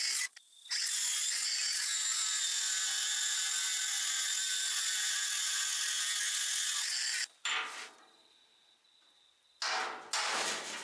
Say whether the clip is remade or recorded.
recorded